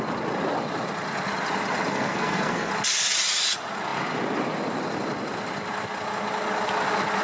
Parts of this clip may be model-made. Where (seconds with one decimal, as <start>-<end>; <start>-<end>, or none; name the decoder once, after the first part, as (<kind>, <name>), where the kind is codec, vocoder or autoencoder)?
1.9-2.7 (codec, SNAC)